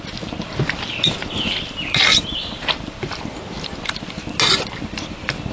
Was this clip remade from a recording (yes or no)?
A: no